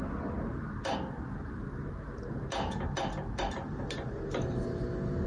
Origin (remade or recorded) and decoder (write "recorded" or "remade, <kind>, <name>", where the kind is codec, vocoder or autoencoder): recorded